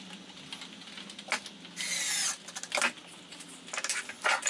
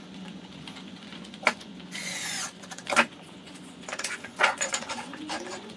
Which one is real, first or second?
first